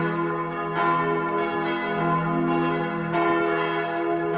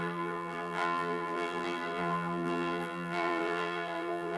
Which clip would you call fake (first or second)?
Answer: second